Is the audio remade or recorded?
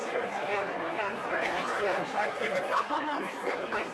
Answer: remade